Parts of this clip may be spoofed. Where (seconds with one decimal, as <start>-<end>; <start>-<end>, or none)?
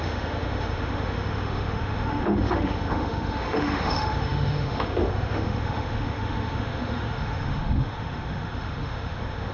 0.0-9.5